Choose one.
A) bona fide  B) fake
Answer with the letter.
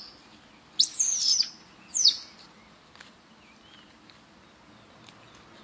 B